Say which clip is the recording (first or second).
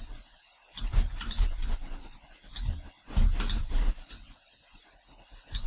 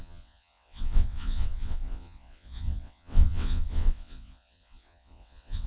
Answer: first